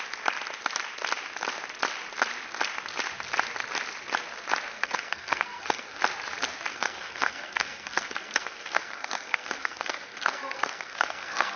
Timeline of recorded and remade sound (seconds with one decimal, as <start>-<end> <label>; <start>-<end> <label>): 0.0-4.7 recorded; 4.7-6.0 remade; 6.0-6.7 recorded; 6.7-11.6 remade